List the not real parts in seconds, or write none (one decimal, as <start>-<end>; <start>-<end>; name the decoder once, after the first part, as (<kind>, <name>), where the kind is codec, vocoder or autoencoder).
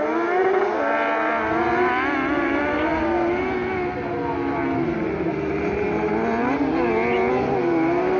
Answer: none